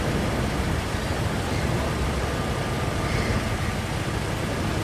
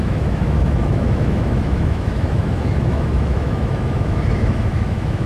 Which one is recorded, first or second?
first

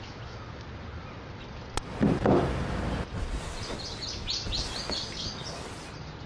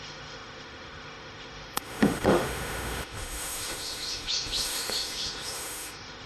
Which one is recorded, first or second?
first